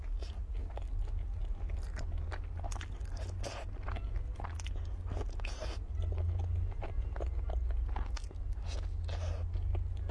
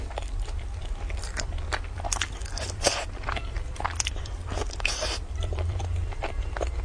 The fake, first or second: second